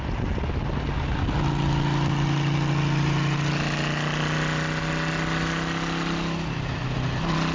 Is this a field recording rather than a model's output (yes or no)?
yes